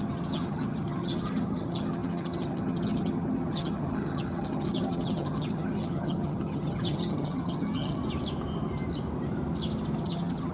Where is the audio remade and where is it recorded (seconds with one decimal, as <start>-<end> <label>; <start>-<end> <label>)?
0.0-8.0 remade; 8.0-10.0 recorded; 10.0-10.5 remade